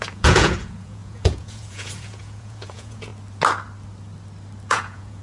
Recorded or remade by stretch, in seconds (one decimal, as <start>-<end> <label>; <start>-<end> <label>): 0.0-3.1 remade; 3.1-4.7 recorded; 4.7-5.2 remade